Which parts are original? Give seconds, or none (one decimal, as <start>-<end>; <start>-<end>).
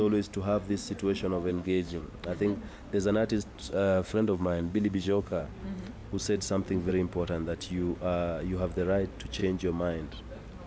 0.0-1.5; 2.0-3.6; 5.4-10.7